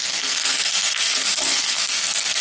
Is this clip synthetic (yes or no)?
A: yes